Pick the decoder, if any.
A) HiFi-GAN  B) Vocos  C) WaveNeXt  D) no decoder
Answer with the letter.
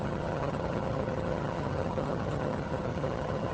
A